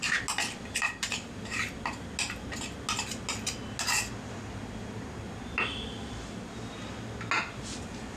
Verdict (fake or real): real